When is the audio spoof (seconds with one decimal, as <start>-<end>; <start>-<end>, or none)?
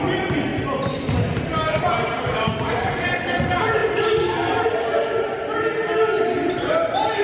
none